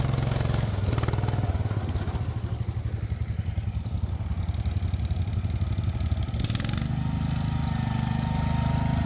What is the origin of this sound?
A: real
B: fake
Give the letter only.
A